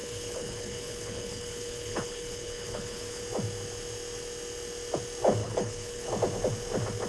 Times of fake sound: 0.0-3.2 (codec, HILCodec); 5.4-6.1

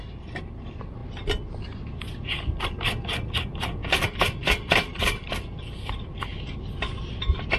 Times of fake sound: 0.0-1.0 (vocoder, BigVGAN v2); 2.6-6.3; 7.0-7.6

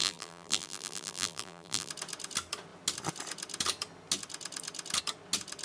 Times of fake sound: 0.0-1.9 (vocoder, BigVGAN v2)

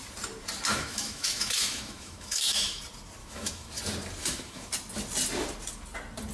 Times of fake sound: 0.7-2.8 (autoencoder, DAC-VAE); 3.2-3.7; 4.2-4.7